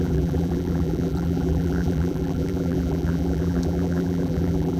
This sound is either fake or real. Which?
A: fake